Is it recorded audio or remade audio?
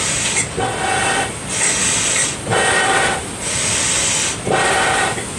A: recorded